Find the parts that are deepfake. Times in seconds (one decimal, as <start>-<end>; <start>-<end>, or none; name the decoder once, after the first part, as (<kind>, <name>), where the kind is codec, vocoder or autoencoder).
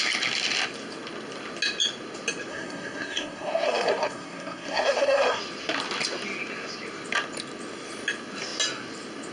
2.5-5.4 (codec, SNAC)